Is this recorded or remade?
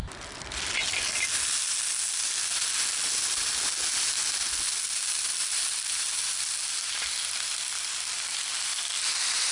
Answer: recorded